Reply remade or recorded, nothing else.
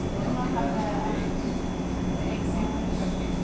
recorded